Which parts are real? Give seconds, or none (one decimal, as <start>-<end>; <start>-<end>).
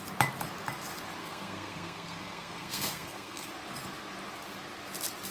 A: 0.0-1.2; 3.5-5.3